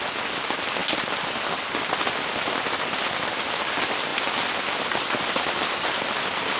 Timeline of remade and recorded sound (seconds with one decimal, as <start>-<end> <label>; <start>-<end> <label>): 0.0-6.6 recorded